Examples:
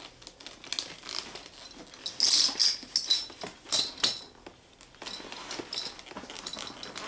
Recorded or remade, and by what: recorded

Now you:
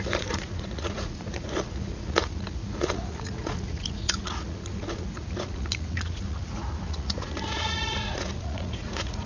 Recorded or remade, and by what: remade, vocoder, Vocos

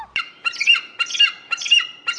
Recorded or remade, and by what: recorded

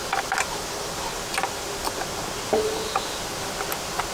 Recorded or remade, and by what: recorded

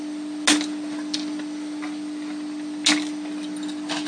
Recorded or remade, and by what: recorded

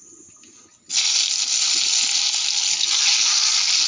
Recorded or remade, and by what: recorded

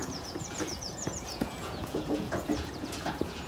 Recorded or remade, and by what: remade, vocoder, Vocos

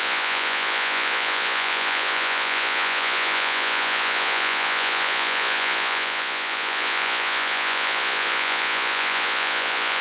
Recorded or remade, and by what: remade, vocoder, Vocos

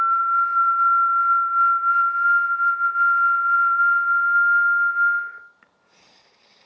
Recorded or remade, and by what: recorded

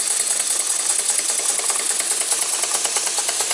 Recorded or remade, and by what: recorded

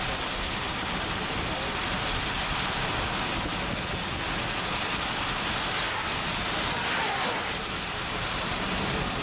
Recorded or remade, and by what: recorded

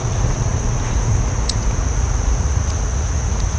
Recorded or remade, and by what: remade, vocoder, Vocos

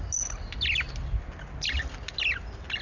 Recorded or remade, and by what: recorded